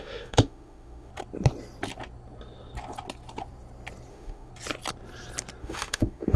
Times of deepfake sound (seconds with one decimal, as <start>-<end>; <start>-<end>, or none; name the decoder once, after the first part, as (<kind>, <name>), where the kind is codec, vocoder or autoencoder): 0.0-1.1 (autoencoder, DAC-VAE); 4.1-4.5; 5.6-6.4